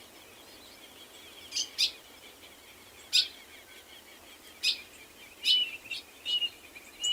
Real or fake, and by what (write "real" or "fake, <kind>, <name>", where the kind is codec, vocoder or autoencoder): real